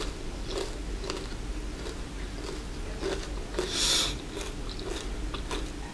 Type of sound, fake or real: real